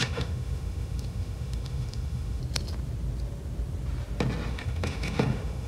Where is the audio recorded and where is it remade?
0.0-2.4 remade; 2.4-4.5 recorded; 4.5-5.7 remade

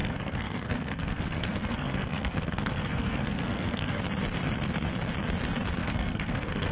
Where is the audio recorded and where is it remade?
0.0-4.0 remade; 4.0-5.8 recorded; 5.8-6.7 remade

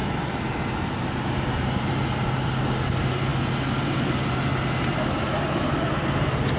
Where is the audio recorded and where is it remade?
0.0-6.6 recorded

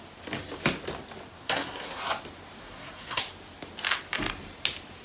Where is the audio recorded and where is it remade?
0.0-1.3 recorded; 1.3-2.0 remade; 2.0-2.6 recorded; 2.6-3.2 remade; 3.2-5.0 recorded